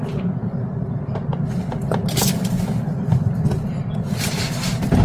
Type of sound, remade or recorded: recorded